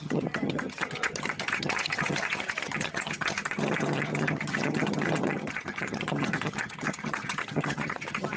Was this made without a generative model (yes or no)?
no